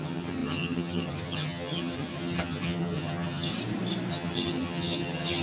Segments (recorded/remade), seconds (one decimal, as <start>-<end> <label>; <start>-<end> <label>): 0.0-3.5 remade; 3.5-4.1 recorded; 4.1-5.4 remade